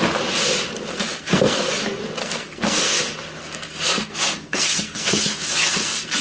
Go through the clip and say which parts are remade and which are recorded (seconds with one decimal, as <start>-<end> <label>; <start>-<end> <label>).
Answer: 0.0-0.9 recorded; 0.9-1.7 remade; 1.7-2.2 recorded; 2.2-3.0 remade; 3.0-3.4 recorded; 3.4-6.2 remade